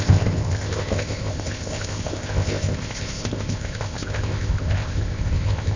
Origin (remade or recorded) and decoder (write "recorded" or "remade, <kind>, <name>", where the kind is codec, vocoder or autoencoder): remade, codec, ZipCodec